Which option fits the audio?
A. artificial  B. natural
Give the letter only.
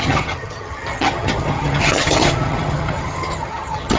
A